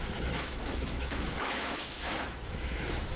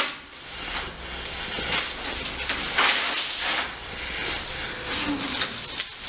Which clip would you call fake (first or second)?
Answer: first